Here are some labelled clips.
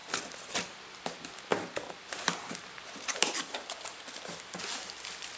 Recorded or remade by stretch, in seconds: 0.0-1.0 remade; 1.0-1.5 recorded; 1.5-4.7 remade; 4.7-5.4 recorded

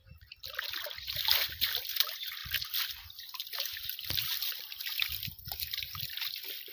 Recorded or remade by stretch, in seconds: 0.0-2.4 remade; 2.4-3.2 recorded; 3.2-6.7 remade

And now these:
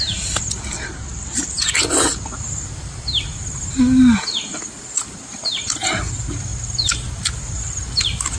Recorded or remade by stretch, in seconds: 0.0-8.4 recorded

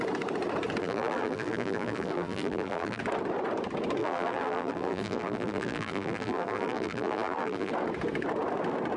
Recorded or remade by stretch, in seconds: 0.0-0.8 recorded; 0.8-3.0 remade; 3.0-4.0 recorded; 4.0-7.7 remade; 7.7-9.0 recorded